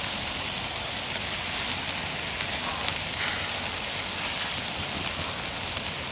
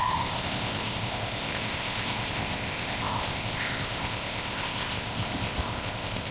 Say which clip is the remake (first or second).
second